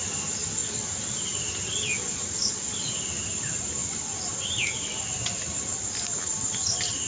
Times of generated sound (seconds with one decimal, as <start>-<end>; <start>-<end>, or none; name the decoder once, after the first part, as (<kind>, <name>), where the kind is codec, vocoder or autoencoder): none